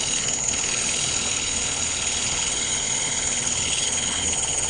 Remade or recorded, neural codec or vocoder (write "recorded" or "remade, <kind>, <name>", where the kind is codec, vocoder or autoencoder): remade, codec, HILCodec